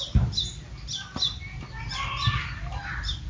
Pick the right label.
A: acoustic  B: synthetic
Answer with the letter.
A